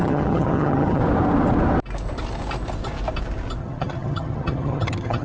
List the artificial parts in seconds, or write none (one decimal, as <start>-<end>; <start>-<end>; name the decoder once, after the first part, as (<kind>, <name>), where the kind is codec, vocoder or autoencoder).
0.0-1.0 (vocoder, HiFi-GAN); 3.6-5.2